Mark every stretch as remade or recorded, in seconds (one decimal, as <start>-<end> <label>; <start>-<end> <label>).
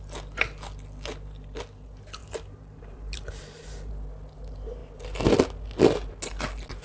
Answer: 0.0-2.2 recorded; 2.2-3.9 remade; 3.9-6.8 recorded